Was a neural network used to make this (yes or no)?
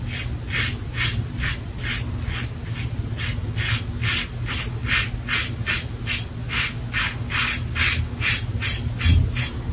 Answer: no